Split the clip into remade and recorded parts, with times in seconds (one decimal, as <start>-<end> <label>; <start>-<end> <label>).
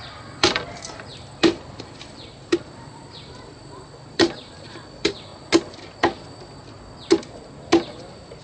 0.0-5.3 remade; 5.3-8.4 recorded